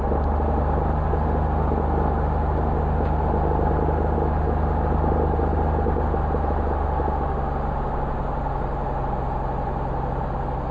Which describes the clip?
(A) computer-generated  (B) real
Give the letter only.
B